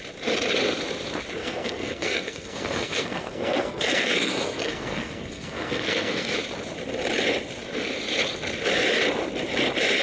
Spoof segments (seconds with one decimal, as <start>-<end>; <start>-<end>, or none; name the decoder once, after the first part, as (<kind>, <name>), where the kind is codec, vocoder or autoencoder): 1.4-6.3 (codec, SNAC)